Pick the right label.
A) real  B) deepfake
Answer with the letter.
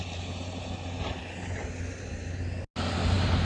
A